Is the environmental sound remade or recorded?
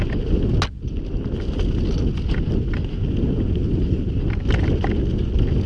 recorded